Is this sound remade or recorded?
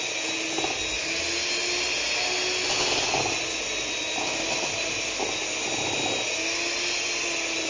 recorded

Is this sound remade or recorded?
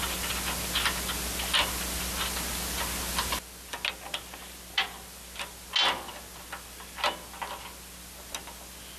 recorded